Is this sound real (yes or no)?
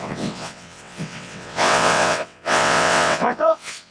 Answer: no